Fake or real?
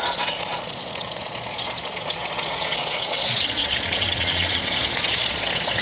fake